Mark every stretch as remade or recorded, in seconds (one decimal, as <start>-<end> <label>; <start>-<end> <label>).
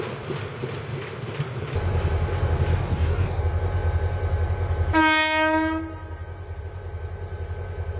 0.0-2.7 recorded; 2.7-3.4 remade; 3.4-8.0 recorded